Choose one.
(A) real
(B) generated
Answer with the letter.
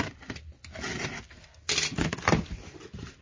A